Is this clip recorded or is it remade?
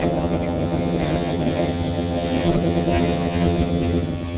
remade